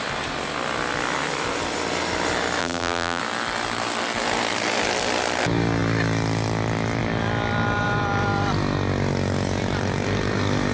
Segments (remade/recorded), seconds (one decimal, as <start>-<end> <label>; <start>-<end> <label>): 0.0-2.6 recorded; 2.6-3.2 remade; 3.2-10.7 recorded